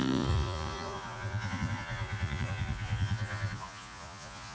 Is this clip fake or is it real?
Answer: fake